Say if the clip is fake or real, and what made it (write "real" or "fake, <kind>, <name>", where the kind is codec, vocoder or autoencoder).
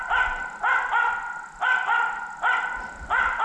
real